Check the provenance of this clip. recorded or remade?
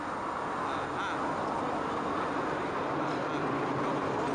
recorded